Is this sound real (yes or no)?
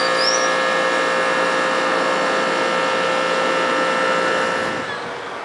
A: yes